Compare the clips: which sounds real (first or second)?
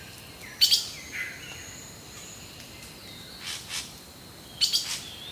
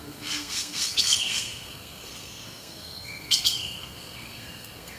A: first